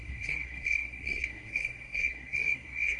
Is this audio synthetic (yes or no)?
yes